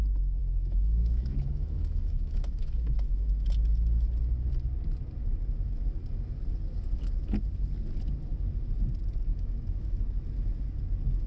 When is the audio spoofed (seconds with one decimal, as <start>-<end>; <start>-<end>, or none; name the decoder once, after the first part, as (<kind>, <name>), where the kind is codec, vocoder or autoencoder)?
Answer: 0.4-3.5 (autoencoder, DAC-VAE); 9.3-10.0